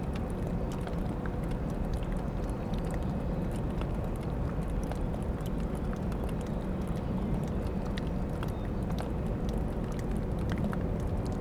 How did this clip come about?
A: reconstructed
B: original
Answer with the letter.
B